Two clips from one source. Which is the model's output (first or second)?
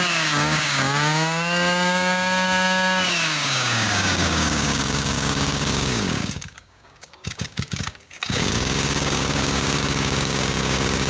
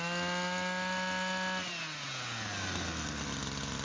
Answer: first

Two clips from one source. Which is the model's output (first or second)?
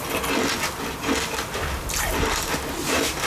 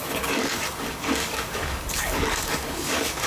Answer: second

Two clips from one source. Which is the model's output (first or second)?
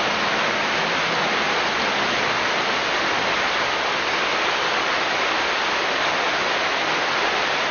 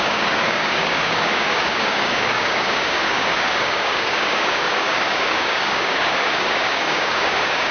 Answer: second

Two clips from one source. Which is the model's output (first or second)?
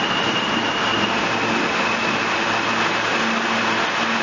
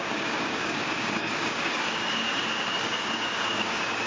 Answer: second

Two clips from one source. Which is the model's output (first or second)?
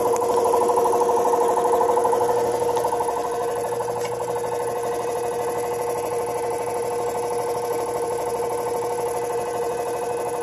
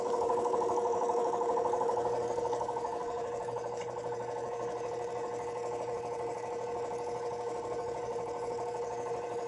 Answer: second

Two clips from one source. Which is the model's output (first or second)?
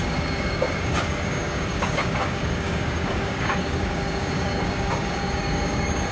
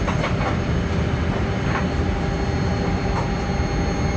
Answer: first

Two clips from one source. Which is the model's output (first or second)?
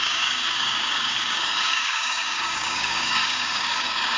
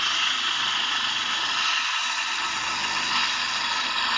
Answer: first